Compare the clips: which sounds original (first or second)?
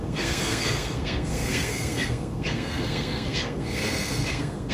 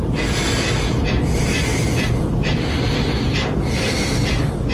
second